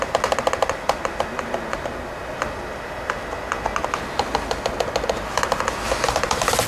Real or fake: real